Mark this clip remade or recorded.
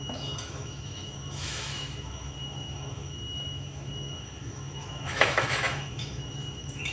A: remade